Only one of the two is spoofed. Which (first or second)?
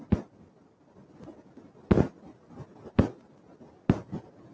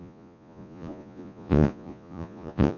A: second